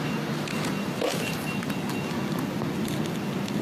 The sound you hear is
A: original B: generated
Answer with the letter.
A